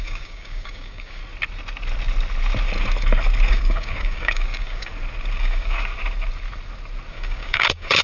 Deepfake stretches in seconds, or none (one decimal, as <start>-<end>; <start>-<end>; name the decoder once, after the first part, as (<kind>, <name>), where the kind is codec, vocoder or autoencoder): 0.0-1.2 (codec, DAC); 3.5-4.9; 5.4-5.9; 7.1-8.0

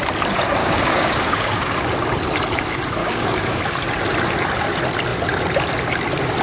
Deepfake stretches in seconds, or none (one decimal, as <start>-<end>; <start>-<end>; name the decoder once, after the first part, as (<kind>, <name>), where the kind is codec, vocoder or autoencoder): 0.6-1.8 (codec, DAC); 3.0-3.6

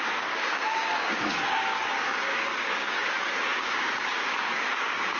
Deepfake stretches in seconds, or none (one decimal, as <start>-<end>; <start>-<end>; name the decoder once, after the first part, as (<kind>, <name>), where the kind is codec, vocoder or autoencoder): 0.0-5.2 (codec, DAC)

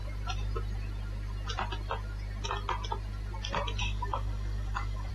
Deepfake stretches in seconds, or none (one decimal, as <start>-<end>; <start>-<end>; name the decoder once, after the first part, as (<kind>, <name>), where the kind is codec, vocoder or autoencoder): 3.8-5.1 (codec, DAC)

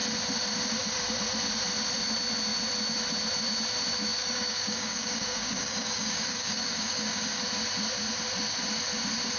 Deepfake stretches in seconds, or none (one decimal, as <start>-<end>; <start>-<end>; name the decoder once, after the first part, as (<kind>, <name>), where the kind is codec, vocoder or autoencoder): 4.2-7.4 (codec, DAC)

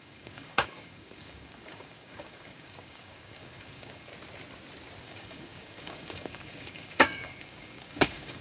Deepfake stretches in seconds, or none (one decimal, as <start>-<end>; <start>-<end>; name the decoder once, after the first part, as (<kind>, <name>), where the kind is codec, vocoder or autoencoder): 0.0-4.1 (codec, DAC); 5.0-8.4

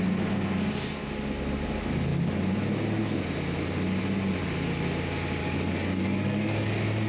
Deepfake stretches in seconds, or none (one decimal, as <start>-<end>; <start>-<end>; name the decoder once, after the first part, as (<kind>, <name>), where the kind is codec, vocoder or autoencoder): 5.4-7.1 (codec, DAC)